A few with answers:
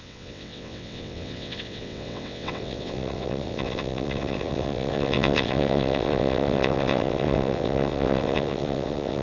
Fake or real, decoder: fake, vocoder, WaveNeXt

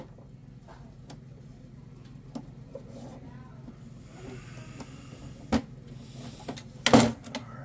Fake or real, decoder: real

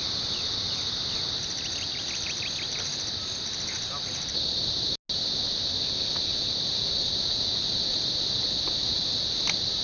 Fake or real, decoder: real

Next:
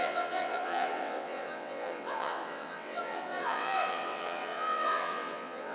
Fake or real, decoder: fake, vocoder, WaveNeXt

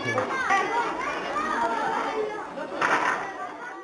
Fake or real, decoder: real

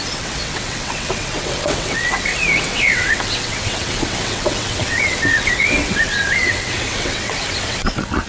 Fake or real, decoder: fake, vocoder, WaveNeXt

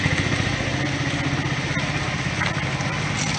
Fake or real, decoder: real